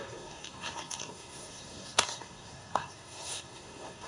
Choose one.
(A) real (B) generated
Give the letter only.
B